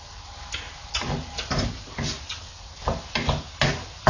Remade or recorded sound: recorded